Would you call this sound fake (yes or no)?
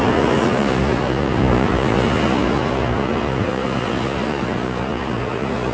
yes